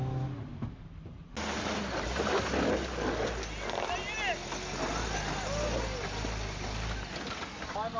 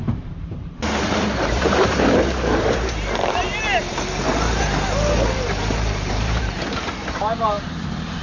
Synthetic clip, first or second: second